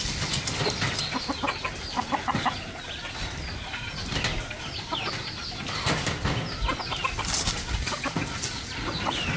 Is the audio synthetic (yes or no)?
no